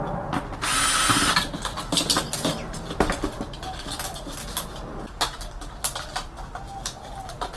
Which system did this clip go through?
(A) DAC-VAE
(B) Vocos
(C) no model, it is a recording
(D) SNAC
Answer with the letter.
C